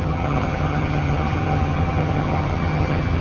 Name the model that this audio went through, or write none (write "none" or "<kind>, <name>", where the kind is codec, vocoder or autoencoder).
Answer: vocoder, HiFi-GAN